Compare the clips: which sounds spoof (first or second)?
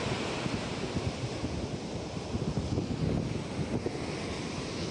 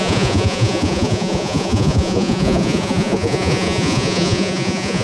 second